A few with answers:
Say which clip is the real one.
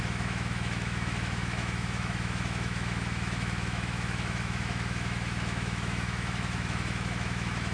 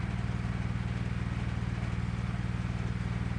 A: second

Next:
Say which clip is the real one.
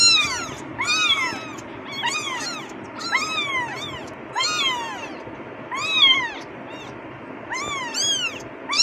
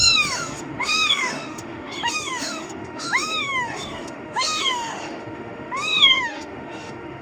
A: first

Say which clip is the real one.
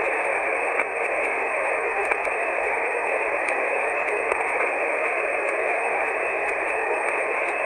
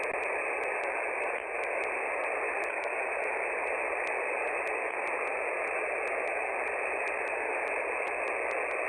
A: second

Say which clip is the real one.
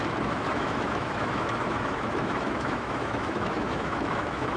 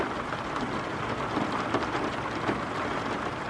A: second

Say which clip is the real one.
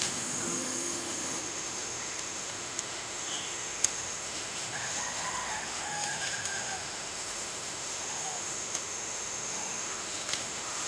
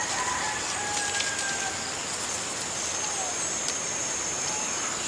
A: second